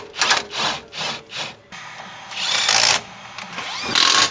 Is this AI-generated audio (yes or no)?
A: no